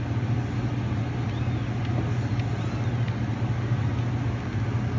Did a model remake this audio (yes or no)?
no